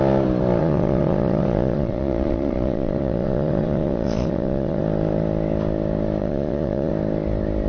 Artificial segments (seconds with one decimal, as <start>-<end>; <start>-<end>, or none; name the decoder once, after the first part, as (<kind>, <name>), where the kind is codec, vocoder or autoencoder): 0.6-4.8 (vocoder, Vocos); 6.2-6.9

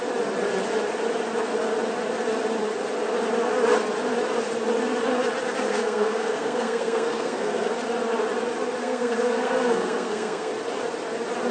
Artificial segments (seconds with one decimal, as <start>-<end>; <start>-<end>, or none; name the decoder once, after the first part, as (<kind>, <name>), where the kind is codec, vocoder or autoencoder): 5.7-7.7 (codec, SNAC); 8.8-10.5